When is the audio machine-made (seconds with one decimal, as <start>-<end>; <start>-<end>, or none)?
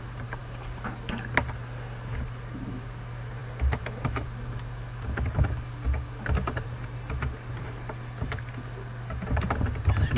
none